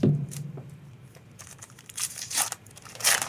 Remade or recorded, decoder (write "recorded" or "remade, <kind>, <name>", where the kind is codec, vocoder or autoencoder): remade, vocoder, BigVGAN v2